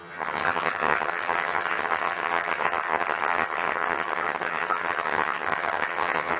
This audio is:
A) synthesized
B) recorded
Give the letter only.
A